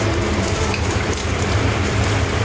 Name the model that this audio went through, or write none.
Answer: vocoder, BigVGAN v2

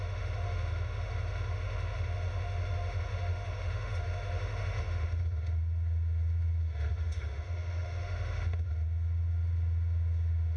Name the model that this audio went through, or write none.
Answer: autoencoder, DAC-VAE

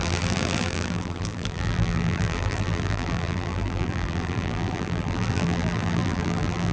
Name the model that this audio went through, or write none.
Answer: vocoder, BigVGAN v2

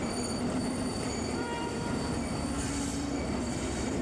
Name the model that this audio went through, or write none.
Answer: vocoder, BigVGAN v2